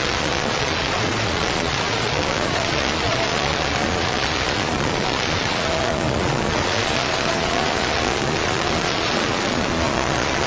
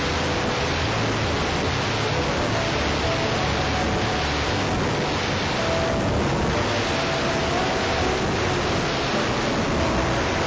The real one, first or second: second